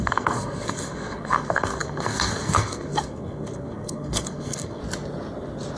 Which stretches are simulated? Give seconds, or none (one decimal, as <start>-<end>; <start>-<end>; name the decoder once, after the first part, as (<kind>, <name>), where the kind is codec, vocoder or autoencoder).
0.0-4.8 (codec, SNAC)